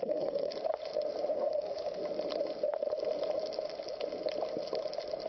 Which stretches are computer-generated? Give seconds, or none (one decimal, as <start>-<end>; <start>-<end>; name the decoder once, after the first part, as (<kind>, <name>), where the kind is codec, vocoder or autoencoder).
0.0-0.5 (codec, SNAC); 1.3-2.0